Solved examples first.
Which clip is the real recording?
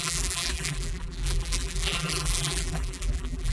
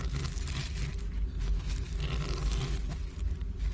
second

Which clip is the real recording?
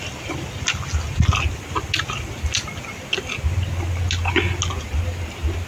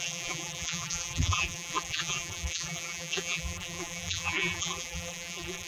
first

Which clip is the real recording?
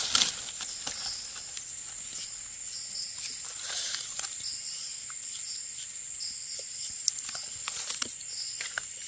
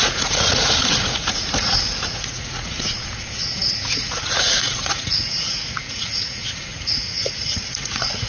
first